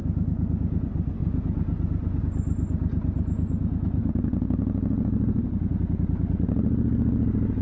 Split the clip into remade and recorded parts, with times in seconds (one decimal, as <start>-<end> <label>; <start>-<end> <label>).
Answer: 0.0-1.2 recorded; 1.2-2.2 remade; 2.2-4.0 recorded; 4.0-5.8 remade; 5.8-7.6 recorded